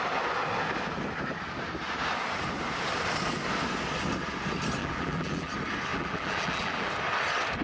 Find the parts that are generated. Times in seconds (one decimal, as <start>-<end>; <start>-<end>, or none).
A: 4.8-5.5; 5.9-6.9